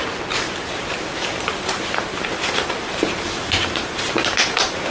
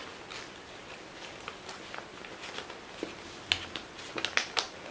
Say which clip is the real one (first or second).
second